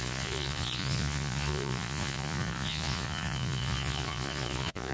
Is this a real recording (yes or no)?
no